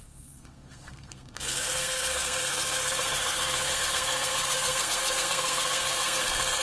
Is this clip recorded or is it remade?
remade